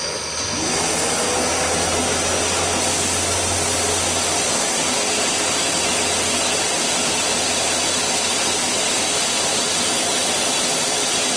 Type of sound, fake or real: real